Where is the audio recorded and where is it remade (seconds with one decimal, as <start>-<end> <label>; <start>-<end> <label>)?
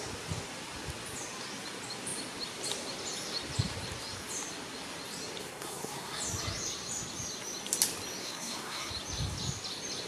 0.0-5.4 recorded; 5.4-6.2 remade; 6.2-8.2 recorded; 8.2-8.9 remade; 8.9-10.1 recorded